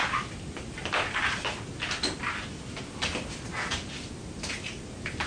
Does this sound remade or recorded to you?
recorded